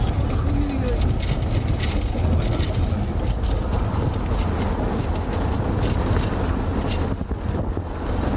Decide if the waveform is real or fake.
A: real